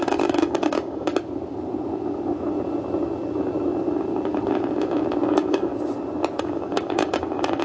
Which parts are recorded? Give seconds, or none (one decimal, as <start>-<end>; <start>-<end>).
1.1-5.3; 5.7-6.4

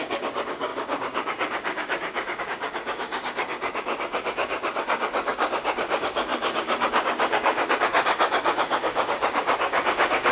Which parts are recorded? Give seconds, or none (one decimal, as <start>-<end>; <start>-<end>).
none

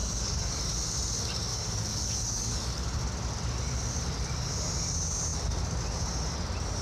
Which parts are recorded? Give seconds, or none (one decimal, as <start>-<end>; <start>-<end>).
0.6-1.5; 3.0-6.8

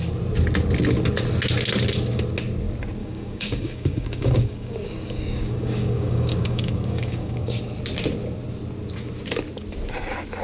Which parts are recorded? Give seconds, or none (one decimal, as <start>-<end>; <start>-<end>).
0.0-3.0; 7.6-10.4

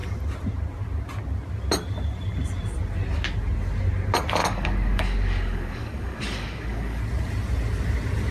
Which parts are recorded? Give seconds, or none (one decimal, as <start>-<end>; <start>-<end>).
0.0-4.4; 7.0-8.3

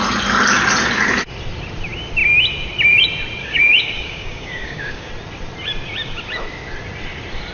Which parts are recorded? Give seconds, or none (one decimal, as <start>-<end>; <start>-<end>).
0.0-3.4; 5.1-7.5